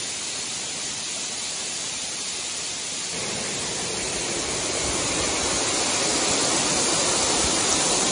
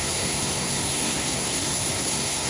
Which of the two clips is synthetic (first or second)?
second